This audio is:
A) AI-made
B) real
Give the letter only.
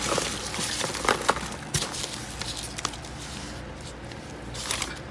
B